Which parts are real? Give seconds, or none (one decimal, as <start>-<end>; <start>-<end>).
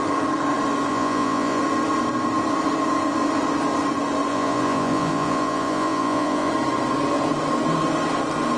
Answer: 0.0-0.9; 1.6-4.3; 6.5-8.6